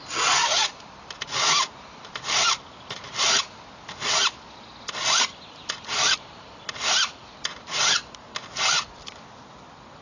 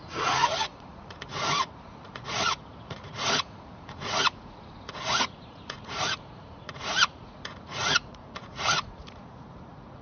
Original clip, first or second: first